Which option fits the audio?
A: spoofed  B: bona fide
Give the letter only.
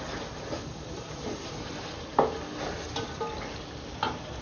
B